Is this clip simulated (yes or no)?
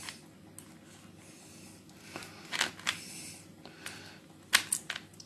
no